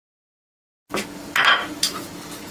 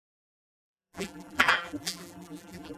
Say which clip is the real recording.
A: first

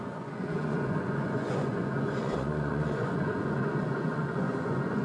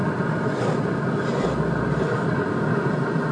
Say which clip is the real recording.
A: second